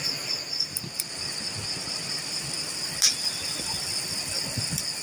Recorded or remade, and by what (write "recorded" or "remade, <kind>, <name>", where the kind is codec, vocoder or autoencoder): recorded